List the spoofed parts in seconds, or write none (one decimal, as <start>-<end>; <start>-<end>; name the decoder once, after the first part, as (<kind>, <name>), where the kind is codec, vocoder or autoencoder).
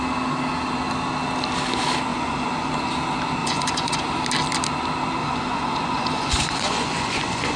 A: 2.1-2.7 (vocoder, Vocos); 3.4-4.0; 5.2-7.6